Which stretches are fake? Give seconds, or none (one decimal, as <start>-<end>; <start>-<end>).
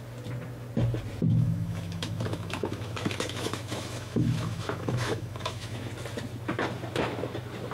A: 1.3-5.9